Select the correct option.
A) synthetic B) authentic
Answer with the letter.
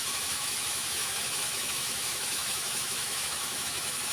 A